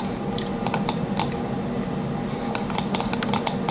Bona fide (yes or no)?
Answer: yes